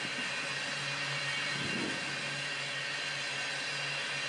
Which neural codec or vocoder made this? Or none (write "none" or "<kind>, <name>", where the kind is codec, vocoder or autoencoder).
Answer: none